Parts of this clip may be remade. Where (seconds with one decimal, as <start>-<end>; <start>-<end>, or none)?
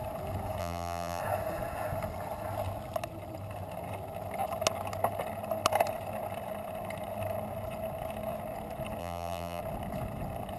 0.6-1.2; 9.0-9.6